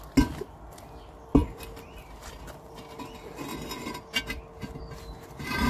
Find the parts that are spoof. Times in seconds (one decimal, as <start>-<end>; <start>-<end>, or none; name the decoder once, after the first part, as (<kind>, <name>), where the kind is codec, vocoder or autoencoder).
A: none